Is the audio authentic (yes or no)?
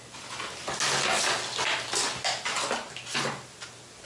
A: yes